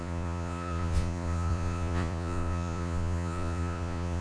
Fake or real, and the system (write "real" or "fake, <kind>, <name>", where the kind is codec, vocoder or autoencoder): fake, vocoder, Vocos